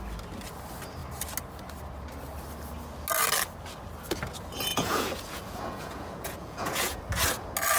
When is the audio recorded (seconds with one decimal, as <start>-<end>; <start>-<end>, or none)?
0.0-4.7; 7.0-7.8